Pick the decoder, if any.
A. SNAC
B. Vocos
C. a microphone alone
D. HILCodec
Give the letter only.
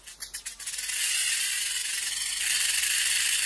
C